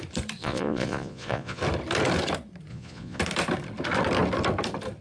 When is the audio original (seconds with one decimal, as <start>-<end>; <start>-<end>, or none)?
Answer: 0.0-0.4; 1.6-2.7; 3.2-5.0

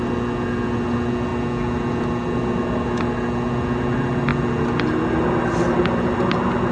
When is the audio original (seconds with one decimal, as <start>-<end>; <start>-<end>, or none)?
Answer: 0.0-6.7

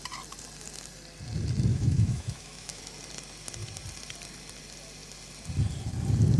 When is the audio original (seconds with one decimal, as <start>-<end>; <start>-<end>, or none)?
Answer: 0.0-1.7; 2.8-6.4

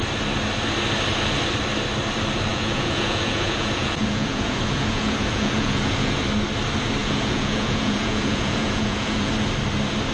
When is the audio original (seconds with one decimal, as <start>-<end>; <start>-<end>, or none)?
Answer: 0.0-2.5; 6.2-7.0; 9.3-10.1

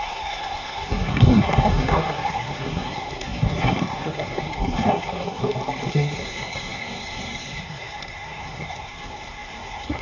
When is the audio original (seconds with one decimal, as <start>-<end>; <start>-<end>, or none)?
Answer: 5.4-5.9